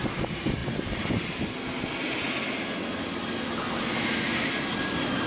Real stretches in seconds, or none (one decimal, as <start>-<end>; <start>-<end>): 0.6-3.8